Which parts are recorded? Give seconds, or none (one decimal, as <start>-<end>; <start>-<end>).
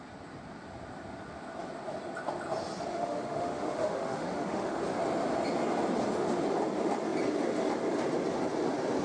0.0-2.9; 4.8-9.0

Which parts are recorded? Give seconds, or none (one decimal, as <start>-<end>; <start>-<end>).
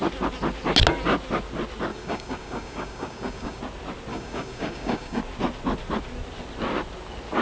0.0-1.9; 3.6-4.1; 5.2-7.4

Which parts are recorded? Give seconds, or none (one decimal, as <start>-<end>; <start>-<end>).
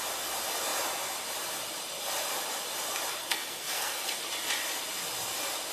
0.0-3.2; 4.2-5.7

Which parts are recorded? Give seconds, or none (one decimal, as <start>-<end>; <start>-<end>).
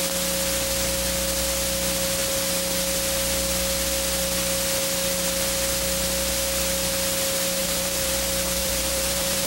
0.0-7.6; 8.1-8.6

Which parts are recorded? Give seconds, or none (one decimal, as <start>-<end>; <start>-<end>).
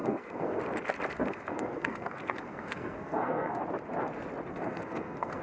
0.6-1.1; 3.6-4.5